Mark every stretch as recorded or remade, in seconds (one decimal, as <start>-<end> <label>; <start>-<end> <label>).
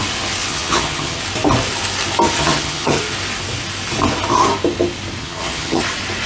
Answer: 0.0-0.5 recorded; 0.5-1.2 remade; 1.2-2.4 recorded; 2.4-3.0 remade; 3.0-5.2 recorded; 5.2-5.8 remade; 5.8-6.3 recorded